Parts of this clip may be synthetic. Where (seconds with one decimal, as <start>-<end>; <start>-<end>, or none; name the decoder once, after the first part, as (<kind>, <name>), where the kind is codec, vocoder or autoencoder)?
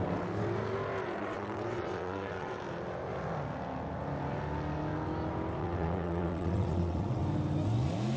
1.2-2.6 (vocoder, WaveNeXt); 5.6-7.2